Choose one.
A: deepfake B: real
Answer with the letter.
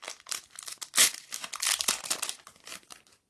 B